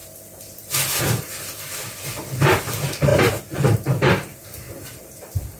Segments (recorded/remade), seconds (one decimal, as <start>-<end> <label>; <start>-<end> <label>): 0.0-5.6 remade